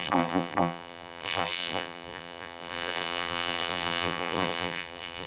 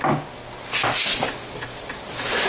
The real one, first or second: second